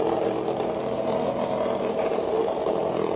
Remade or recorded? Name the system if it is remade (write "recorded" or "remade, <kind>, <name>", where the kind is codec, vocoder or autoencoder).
remade, vocoder, BigVGAN v2